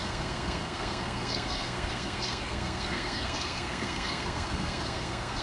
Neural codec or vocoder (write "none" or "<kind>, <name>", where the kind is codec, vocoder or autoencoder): codec, SNAC